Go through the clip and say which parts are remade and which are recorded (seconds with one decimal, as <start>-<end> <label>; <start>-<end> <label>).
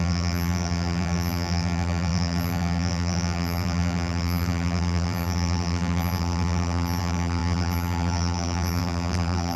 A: 0.0-9.6 remade